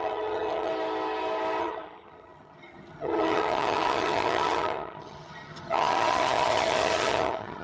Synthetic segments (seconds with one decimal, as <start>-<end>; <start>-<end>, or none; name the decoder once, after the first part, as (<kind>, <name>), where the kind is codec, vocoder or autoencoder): 0.0-0.7 (vocoder, HiFi-GAN); 1.6-7.6